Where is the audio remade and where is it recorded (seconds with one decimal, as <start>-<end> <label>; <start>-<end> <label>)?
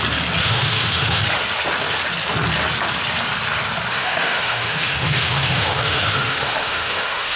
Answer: 0.0-0.4 recorded; 0.4-1.2 remade; 1.2-3.9 recorded; 3.9-7.4 remade